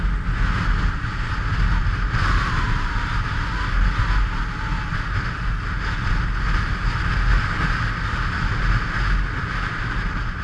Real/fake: real